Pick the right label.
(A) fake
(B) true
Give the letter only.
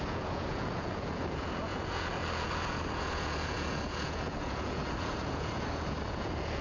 A